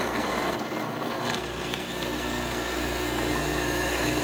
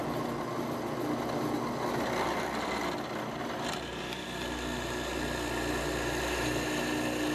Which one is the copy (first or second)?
first